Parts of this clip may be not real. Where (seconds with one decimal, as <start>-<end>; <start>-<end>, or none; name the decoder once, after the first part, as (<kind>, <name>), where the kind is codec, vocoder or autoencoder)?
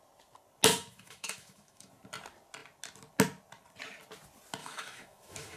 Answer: 0.7-1.9 (autoencoder, DAC-VAE); 4.6-5.6